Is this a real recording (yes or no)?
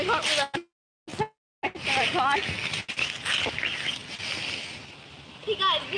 yes